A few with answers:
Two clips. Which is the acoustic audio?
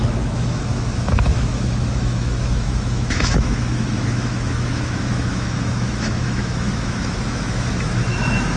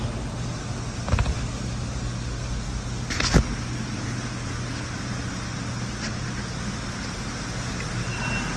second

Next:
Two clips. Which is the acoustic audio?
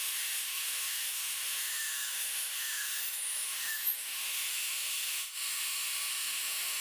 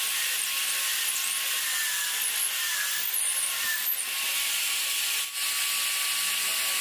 second